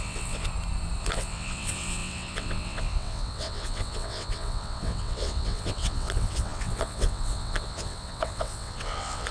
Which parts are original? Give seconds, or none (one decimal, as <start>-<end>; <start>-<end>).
0.5-1.0